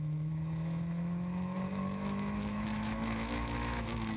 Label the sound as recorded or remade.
remade